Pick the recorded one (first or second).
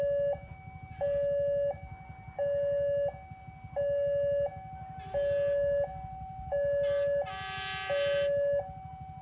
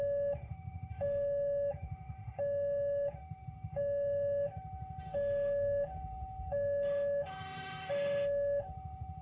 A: first